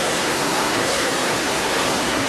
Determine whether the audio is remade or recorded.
remade